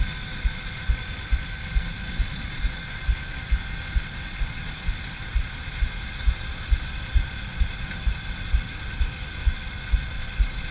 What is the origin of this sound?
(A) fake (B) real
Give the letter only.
B